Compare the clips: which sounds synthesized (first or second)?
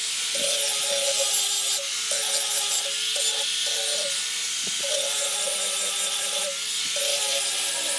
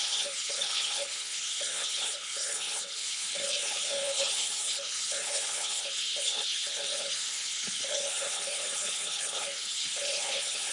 second